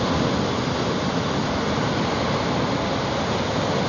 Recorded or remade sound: recorded